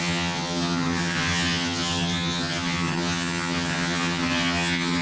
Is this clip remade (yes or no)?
yes